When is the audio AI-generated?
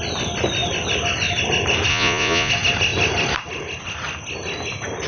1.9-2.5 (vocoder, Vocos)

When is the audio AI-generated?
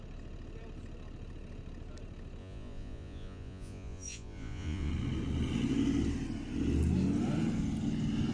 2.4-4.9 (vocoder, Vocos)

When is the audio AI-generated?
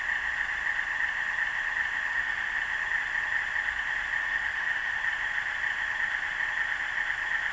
2.1-2.6 (autoencoder, DAC-VAE); 4.2-5.0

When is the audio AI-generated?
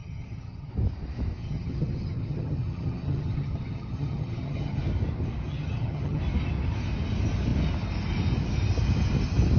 0.0-0.7 (vocoder, HiFi-GAN); 1.4-4.8; 5.5-6.2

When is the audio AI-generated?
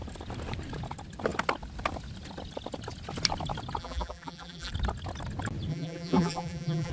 3.8-4.7 (vocoder, BigVGAN v2); 5.7-6.9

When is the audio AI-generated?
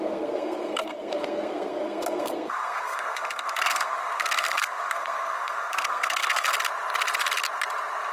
0.0-6.5 (codec, SNAC)